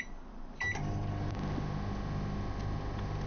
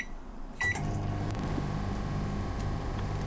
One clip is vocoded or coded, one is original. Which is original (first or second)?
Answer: first